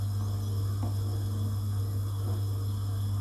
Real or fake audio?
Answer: real